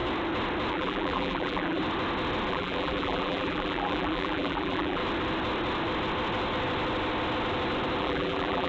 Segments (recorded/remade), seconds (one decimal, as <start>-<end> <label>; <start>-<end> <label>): 0.0-0.7 recorded; 0.7-1.8 remade; 1.8-2.5 recorded; 2.5-5.0 remade; 5.0-8.0 recorded; 8.0-8.7 remade